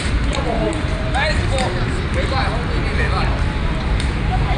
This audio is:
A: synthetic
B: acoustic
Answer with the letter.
B